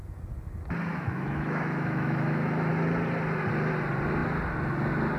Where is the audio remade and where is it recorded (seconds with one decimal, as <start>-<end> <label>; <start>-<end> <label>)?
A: 0.0-0.9 recorded; 0.9-2.7 remade; 2.7-5.2 recorded